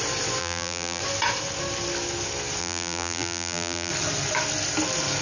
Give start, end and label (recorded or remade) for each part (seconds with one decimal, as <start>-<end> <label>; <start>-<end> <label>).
0.0-0.4 recorded; 0.4-1.0 remade; 1.0-2.6 recorded; 2.6-3.9 remade; 3.9-5.2 recorded